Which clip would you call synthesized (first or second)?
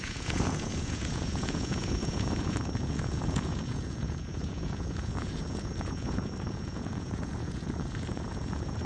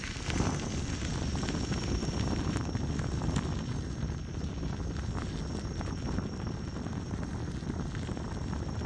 first